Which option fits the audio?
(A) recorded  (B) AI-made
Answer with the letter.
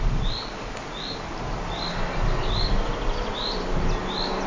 A